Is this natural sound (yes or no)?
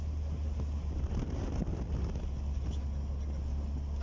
yes